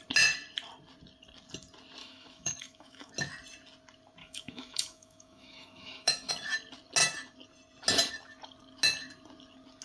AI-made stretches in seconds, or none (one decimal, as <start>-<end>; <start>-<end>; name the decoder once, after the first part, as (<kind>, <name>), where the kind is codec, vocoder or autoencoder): 2.0-3.1 (autoencoder, DAC-VAE); 4.2-6.3